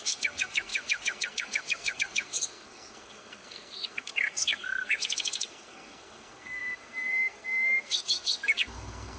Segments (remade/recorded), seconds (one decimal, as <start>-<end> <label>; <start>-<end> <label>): 0.0-9.2 remade